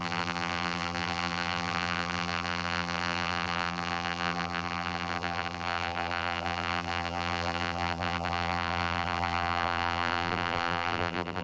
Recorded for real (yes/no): no